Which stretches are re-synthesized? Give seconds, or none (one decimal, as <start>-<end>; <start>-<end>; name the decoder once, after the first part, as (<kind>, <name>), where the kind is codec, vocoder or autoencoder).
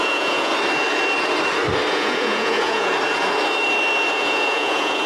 0.0-0.5 (vocoder, Vocos); 1.9-2.9; 4.1-5.1